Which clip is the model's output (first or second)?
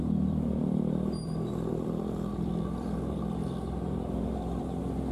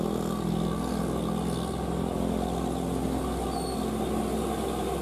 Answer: first